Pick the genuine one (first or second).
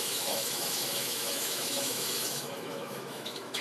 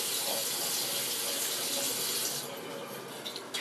second